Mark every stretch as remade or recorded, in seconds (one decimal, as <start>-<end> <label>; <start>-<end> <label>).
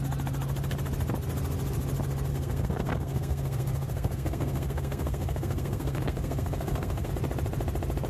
0.0-2.3 recorded; 2.3-7.1 remade; 7.1-8.1 recorded